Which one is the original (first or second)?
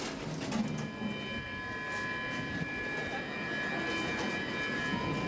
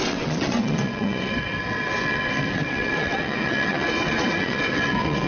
first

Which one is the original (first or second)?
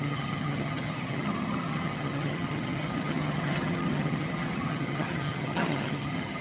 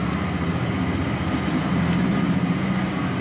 second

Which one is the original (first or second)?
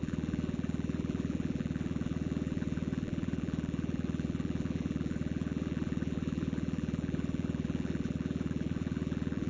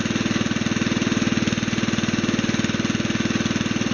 second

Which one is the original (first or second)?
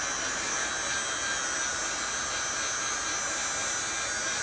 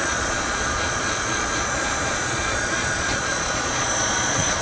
first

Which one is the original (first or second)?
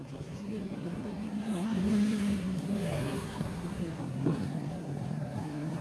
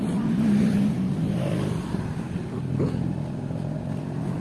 second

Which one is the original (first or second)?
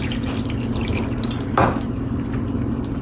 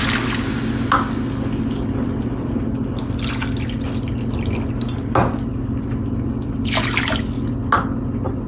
second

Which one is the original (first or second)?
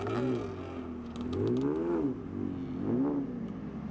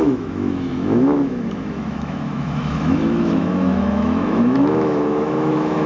first